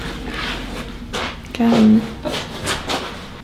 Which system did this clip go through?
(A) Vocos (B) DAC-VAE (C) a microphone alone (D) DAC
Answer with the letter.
C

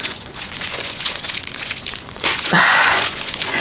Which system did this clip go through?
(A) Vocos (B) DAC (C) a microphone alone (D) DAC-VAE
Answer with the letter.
A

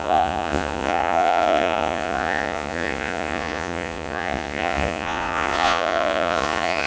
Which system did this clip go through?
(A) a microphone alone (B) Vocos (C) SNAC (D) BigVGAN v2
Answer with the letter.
B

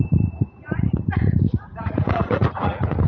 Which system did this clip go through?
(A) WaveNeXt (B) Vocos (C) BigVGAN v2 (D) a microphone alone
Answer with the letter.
B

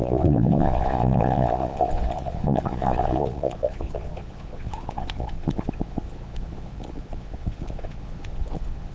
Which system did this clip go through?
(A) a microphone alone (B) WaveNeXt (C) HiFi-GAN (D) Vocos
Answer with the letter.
D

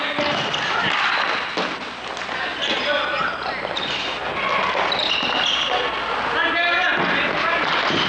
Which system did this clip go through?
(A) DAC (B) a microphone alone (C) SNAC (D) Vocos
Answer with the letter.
B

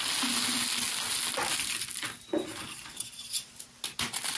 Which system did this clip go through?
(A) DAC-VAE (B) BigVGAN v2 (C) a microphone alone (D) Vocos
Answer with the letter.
C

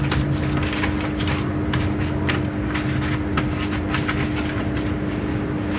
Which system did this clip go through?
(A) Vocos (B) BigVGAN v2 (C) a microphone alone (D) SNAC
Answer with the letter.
C